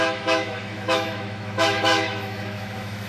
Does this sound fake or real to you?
fake